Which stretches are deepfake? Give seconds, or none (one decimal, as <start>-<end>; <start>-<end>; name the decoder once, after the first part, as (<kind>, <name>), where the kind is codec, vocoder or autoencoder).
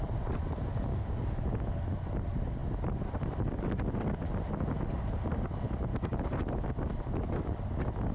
0.9-1.6 (codec, DAC)